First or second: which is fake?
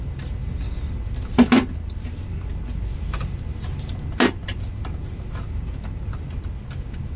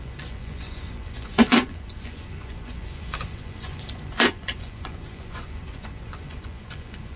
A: second